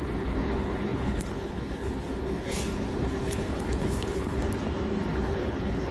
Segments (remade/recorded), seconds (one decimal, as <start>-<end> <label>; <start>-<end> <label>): 0.0-4.4 remade; 4.4-5.1 recorded; 5.1-5.9 remade